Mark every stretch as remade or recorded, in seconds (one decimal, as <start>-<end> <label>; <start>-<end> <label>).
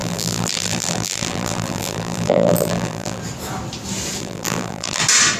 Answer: 0.0-3.2 remade; 3.2-4.2 recorded; 4.2-5.0 remade; 5.0-5.4 recorded